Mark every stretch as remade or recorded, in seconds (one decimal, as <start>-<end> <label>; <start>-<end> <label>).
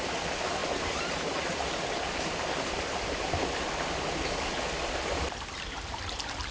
0.0-6.5 recorded